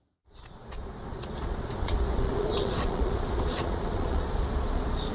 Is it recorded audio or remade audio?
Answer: remade